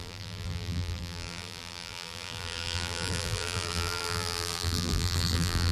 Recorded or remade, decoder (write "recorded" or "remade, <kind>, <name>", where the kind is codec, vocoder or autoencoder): remade, vocoder, BigVGAN v2